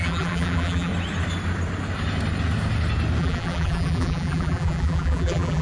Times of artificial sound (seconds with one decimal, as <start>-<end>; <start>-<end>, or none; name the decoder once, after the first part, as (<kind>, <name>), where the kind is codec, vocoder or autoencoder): 0.0-0.9 (vocoder, BigVGAN v2); 3.2-5.6